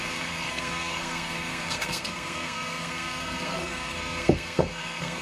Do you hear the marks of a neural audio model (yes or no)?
yes